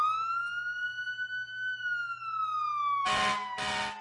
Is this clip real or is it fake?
real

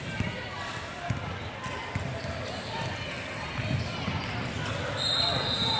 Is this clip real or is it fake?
real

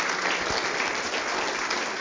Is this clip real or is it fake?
real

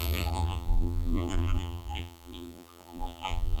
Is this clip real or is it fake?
fake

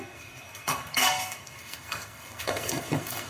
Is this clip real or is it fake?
fake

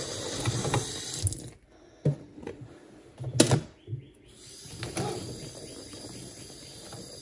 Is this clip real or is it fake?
real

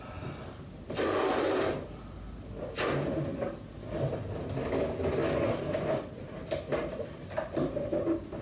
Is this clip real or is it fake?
real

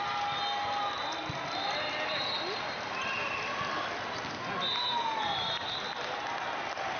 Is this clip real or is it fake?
real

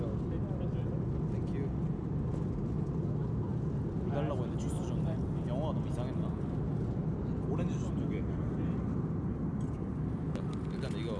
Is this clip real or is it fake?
real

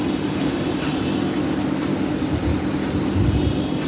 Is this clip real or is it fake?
real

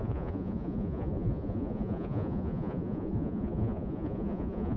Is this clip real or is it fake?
fake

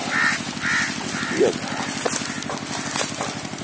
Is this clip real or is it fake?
real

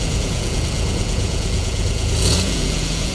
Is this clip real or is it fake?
fake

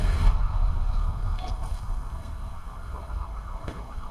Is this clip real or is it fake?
fake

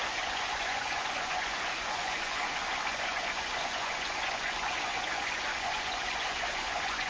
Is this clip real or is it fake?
fake